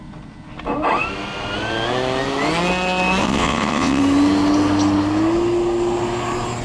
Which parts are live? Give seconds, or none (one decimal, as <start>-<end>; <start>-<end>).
0.0-3.2; 4.0-6.6